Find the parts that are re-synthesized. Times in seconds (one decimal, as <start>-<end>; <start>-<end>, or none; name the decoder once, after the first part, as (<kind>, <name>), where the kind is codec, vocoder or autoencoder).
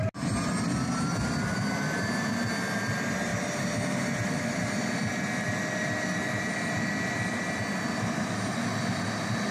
none